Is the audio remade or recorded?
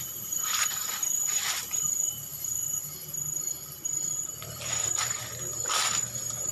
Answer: remade